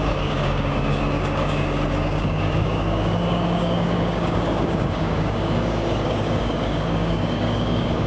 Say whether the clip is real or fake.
fake